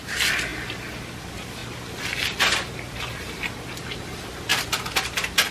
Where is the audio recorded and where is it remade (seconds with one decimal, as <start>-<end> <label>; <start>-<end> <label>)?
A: 0.0-4.5 recorded; 4.5-5.5 remade